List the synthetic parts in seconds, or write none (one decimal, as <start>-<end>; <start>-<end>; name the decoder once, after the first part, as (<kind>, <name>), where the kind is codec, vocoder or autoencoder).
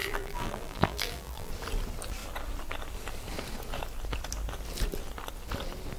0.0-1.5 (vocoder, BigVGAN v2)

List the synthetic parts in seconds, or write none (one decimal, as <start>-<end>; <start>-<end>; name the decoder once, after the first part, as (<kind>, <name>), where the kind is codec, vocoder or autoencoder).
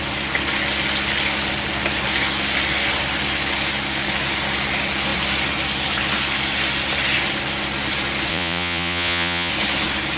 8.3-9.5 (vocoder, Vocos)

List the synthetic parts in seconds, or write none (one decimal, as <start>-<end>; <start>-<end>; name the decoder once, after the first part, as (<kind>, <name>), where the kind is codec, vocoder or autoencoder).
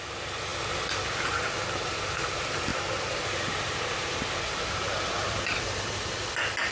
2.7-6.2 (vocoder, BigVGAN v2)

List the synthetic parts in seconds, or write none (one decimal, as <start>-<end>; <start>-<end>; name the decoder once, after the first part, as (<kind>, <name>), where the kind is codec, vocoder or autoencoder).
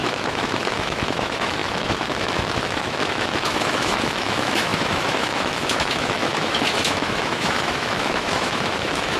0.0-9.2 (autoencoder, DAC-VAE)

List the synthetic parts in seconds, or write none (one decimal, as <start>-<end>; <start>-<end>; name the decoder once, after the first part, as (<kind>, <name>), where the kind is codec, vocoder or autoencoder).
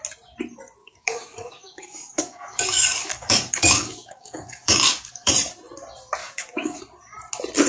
0.8-5.3 (codec, DAC); 6.2-6.8